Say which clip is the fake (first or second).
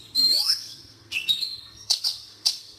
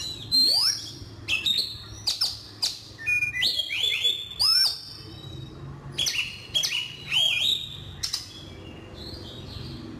first